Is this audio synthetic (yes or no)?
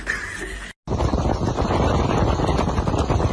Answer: no